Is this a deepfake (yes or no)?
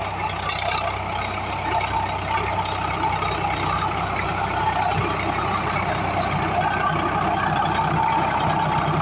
no